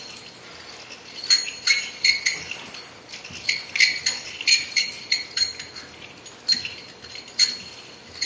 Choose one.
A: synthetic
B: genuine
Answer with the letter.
B